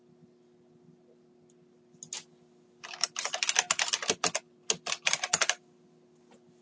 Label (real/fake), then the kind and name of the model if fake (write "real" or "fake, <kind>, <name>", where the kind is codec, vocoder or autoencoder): real